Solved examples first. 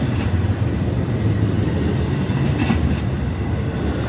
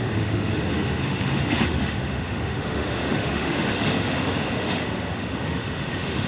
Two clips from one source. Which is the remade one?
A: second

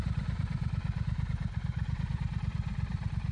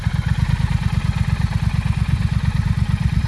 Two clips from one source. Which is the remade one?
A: first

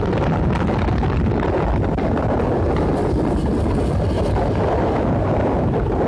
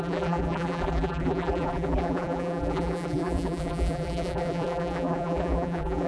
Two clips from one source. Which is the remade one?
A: second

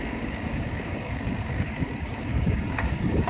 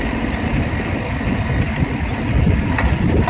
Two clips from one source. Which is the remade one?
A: first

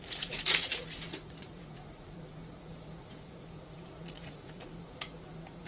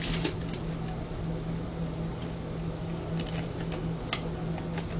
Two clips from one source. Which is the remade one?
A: first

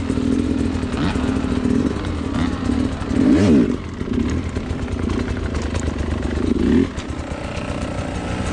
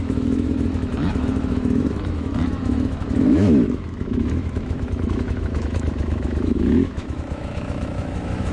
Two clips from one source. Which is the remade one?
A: second